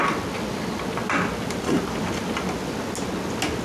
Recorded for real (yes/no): yes